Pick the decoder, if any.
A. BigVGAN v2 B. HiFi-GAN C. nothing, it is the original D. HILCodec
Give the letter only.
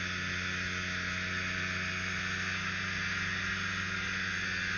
C